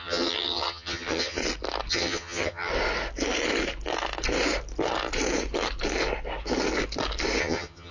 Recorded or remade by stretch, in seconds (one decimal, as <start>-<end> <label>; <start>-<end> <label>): 0.0-1.4 remade; 1.4-1.9 recorded; 1.9-2.7 remade; 2.7-7.4 recorded; 7.4-7.9 remade